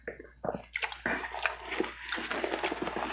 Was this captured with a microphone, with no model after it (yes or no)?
yes